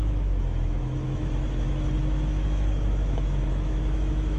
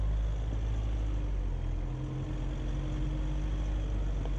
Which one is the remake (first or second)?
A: first